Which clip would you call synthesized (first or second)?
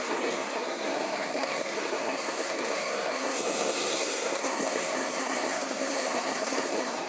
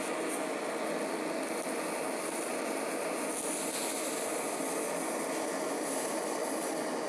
first